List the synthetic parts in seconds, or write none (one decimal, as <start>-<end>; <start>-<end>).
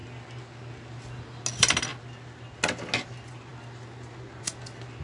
none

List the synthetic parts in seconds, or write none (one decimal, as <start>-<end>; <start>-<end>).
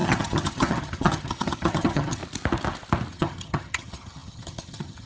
0.0-2.2; 3.1-5.1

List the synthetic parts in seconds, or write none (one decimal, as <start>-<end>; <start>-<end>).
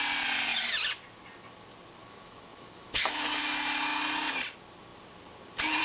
2.0-3.4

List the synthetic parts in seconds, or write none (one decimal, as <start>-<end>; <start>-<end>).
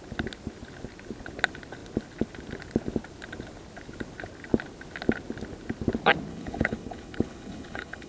6.3-8.1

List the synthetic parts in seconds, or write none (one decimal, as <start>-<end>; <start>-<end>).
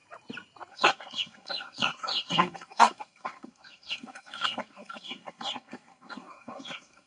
0.7-7.1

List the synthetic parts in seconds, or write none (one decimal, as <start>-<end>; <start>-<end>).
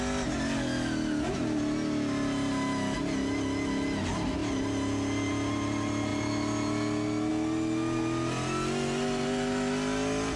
none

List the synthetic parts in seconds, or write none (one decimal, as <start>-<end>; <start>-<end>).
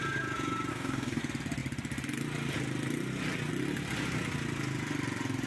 0.7-1.2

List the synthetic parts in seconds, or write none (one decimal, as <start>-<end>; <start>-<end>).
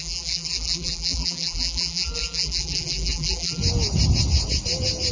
0.0-3.6